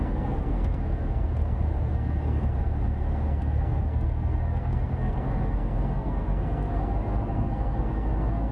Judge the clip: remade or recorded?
remade